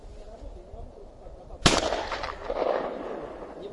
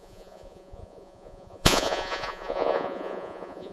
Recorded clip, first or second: first